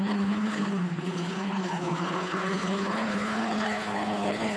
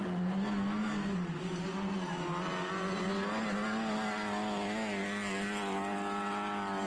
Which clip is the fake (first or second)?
first